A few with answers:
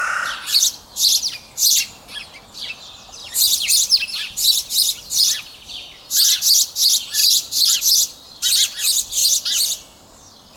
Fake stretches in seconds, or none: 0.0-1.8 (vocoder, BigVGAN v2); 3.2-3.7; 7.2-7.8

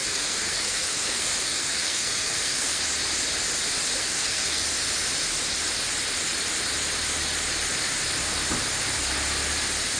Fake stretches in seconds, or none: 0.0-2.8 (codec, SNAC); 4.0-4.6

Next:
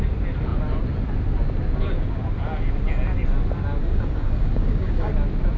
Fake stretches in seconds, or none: 3.8-5.1 (codec, DAC)

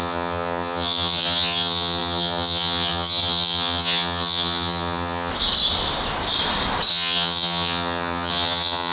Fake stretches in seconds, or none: 0.0-5.3 (vocoder, HiFi-GAN); 6.9-8.9